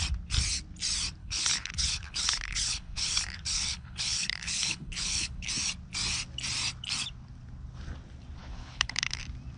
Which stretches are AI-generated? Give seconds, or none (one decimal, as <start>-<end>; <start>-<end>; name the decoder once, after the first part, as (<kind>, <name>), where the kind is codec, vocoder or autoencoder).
1.2-5.5 (codec, HILCodec); 8.4-9.2